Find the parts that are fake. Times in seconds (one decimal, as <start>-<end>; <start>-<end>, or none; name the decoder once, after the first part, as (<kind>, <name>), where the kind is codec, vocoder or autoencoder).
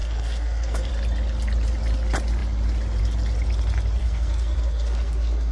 0.0-0.9 (codec, SNAC); 4.0-5.5